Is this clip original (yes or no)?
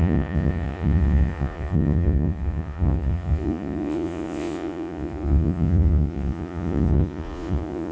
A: no